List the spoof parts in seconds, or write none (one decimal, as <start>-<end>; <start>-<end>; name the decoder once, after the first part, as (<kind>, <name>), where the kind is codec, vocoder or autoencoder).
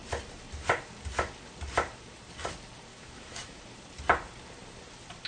2.9-3.6 (autoencoder, DAC-VAE)